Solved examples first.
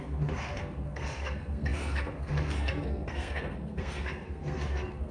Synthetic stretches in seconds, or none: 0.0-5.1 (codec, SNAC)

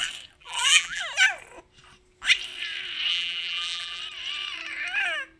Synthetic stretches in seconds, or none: 0.4-1.0 (vocoder, BigVGAN v2); 3.1-4.0

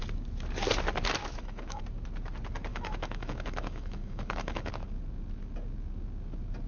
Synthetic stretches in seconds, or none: 1.2-1.8 (autoencoder, DAC-VAE); 2.7-4.7

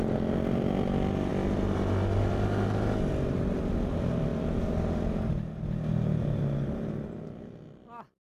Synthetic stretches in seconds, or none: none

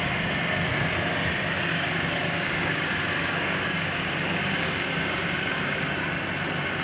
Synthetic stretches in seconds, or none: 1.7-5.8 (codec, DAC)

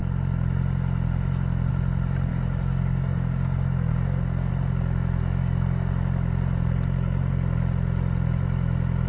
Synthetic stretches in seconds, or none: 2.3-4.5 (codec, DAC); 5.2-5.9

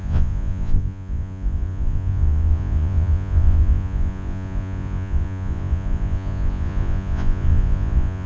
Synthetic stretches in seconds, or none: 0.0-8.3 (vocoder, Vocos)

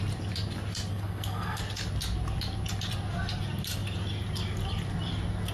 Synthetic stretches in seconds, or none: 0.9-1.6 (codec, SNAC)